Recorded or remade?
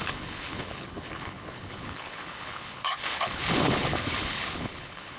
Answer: remade